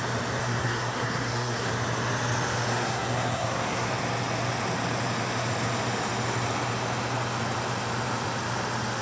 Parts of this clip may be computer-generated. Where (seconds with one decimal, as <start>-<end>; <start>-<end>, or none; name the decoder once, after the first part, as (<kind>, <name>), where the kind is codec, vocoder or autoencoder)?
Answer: 0.4-1.7 (codec, SNAC); 2.7-3.9